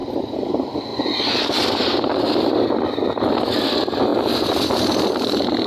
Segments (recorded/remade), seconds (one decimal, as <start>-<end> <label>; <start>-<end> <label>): 0.0-0.5 remade; 0.5-0.9 recorded; 0.9-3.4 remade; 3.4-5.7 recorded